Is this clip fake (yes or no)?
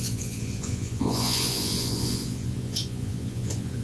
yes